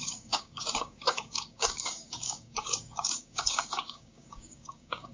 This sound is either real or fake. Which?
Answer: fake